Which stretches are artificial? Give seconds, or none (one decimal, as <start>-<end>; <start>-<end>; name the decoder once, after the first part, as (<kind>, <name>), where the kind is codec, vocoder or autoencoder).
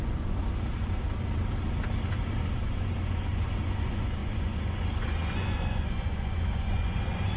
0.0-0.4 (vocoder, Vocos); 2.7-7.4